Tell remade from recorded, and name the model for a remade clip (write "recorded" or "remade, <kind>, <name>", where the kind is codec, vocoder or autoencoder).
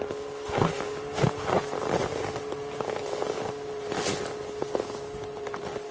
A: recorded